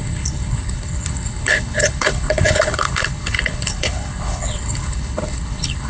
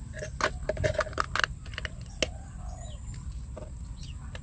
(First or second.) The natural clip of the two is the second